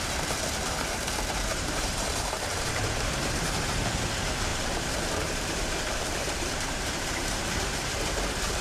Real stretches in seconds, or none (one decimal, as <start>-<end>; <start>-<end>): 0.0-1.5; 3.8-4.5; 7.6-8.6